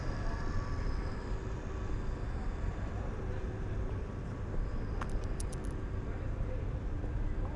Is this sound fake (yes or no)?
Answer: yes